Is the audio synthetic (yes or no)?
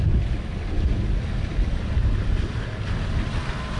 no